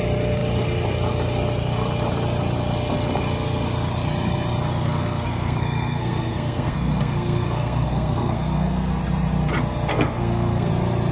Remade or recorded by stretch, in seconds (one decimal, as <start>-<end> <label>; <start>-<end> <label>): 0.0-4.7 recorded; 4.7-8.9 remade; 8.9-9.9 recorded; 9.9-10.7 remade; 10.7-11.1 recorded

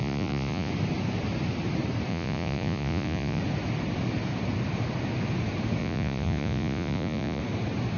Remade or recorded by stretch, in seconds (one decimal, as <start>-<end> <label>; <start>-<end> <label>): 0.0-0.7 remade; 0.7-2.1 recorded; 2.1-3.4 remade; 3.4-5.8 recorded; 5.8-7.4 remade; 7.4-8.0 recorded

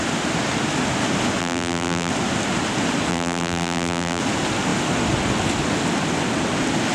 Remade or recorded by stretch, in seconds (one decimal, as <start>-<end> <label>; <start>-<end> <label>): 0.0-1.4 recorded; 1.4-2.1 remade; 2.1-3.1 recorded; 3.1-4.2 remade; 4.2-6.9 recorded

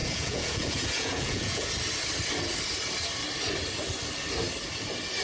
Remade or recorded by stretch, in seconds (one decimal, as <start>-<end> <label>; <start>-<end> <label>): 0.0-1.7 remade; 1.7-5.2 recorded

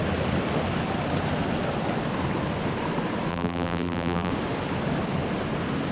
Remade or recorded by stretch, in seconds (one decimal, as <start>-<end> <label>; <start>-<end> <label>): 0.0-3.3 recorded; 3.3-4.3 remade; 4.3-5.9 recorded

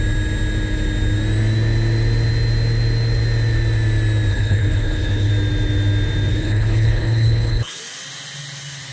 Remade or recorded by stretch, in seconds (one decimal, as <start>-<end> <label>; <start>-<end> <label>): 0.0-4.3 recorded; 4.3-5.3 remade; 5.3-6.3 recorded; 6.3-7.8 remade; 7.8-8.9 recorded